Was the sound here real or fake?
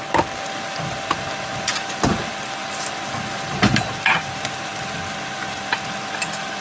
real